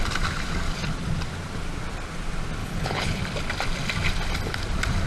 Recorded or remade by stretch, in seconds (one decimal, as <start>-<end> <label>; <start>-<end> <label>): 0.0-2.6 recorded; 2.6-3.2 remade; 3.2-5.1 recorded